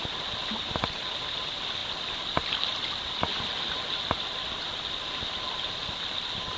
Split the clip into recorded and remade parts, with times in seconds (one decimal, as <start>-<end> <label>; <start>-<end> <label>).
0.0-1.8 recorded; 1.8-5.4 remade; 5.4-6.6 recorded